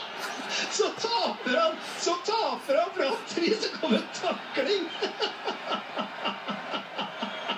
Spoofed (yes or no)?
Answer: no